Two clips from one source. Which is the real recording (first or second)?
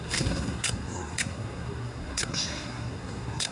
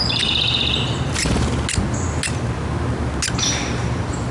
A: second